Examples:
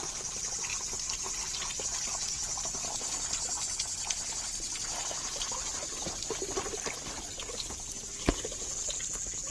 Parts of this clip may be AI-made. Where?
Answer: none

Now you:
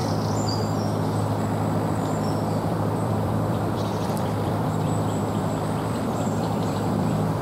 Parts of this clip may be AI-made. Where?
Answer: 2.3-7.4 (vocoder, BigVGAN v2)

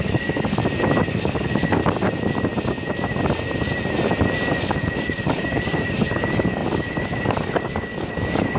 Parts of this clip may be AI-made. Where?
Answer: 0.0-0.6 (codec, DAC); 1.1-1.8; 4.6-8.6

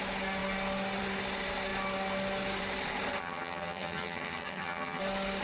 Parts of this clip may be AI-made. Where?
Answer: 3.2-5.0 (vocoder, HiFi-GAN)

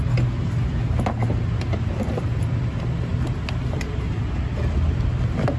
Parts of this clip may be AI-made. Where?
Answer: none

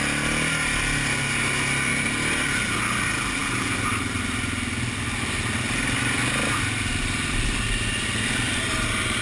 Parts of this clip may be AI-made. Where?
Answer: none

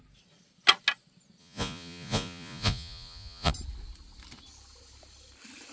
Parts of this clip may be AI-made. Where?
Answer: 1.4-3.5 (vocoder, Vocos)

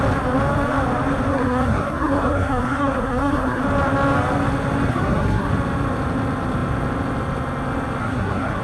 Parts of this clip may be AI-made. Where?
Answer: 1.3-3.6 (codec, SNAC); 4.9-5.5; 8.0-8.6